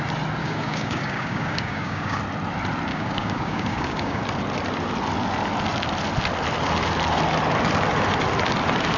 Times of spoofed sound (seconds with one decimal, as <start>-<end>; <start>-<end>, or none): 0.4-2.2; 2.9-4.2